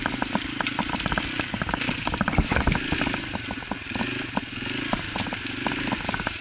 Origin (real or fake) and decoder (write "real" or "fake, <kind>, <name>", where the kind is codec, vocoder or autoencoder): real